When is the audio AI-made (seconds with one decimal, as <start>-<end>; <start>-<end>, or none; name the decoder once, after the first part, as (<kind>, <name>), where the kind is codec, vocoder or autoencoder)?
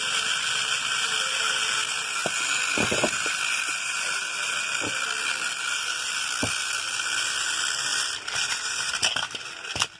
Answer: none